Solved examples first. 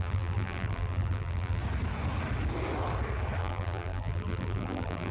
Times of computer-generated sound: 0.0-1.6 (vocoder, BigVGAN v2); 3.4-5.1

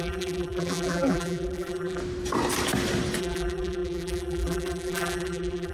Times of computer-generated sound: 0.0-2.0 (vocoder, BigVGAN v2); 3.2-5.7

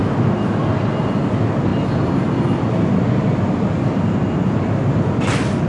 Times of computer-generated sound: none

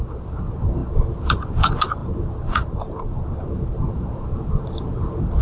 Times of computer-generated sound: 0.0-5.4 (vocoder, BigVGAN v2)

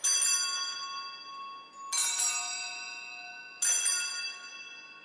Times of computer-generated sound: none

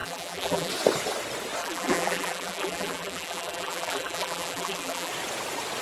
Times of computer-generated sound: 0.0-0.7 (vocoder, BigVGAN v2); 1.6-5.1

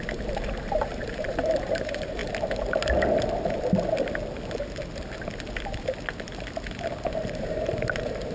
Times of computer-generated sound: 0.0-2.2 (vocoder, BigVGAN v2); 7.1-8.3

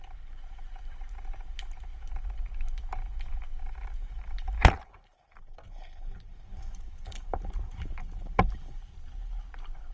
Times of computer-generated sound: 4.0-8.8 (vocoder, BigVGAN v2)